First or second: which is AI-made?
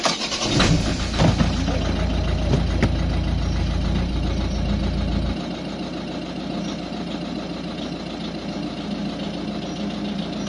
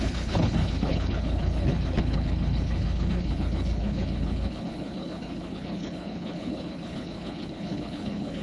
second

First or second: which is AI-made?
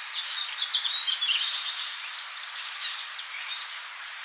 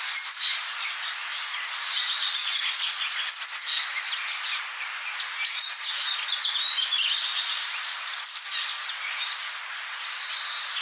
first